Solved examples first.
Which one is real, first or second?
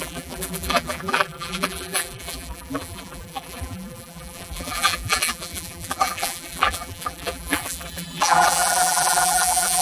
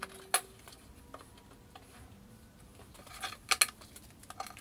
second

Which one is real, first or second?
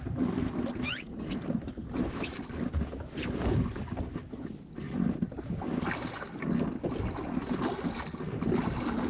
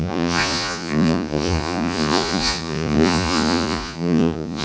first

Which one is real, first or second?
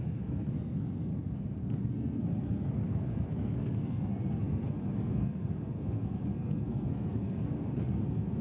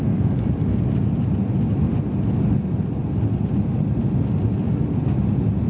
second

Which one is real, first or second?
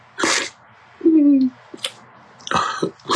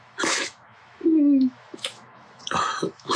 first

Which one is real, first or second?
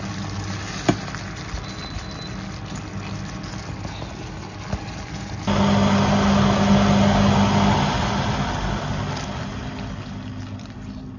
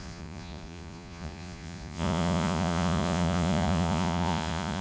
first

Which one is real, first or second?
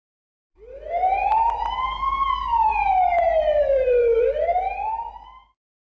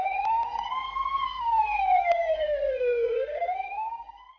first